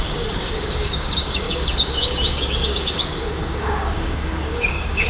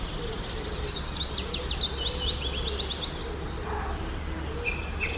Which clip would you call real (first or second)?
second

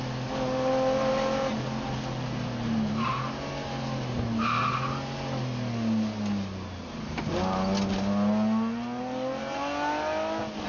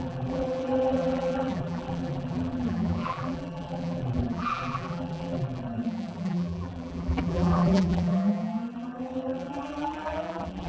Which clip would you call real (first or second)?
first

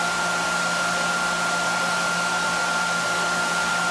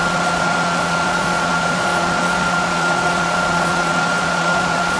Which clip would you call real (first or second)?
first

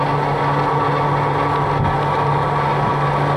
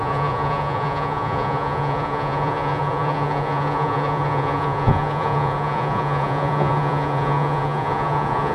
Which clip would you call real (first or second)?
first